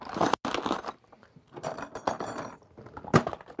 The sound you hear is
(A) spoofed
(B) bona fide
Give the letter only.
B